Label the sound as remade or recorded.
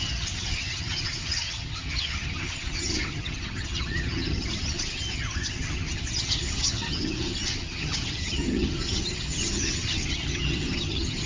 remade